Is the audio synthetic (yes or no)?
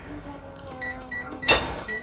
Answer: yes